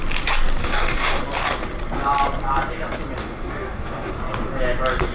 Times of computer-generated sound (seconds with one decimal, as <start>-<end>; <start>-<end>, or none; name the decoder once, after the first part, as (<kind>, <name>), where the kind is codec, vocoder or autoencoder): 0.6-1.2 (codec, DAC); 3.2-4.1